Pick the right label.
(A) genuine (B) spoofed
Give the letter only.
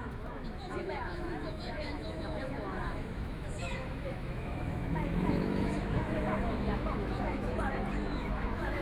B